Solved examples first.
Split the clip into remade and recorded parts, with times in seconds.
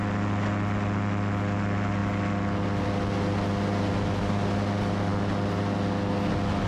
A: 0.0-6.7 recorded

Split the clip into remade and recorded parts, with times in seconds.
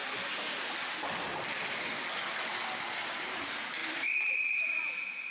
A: 0.0-3.8 recorded; 3.8-5.3 remade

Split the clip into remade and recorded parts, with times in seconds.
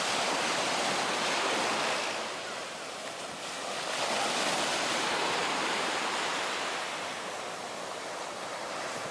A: 0.0-5.4 recorded; 5.4-6.0 remade; 6.0-8.5 recorded; 8.5-9.1 remade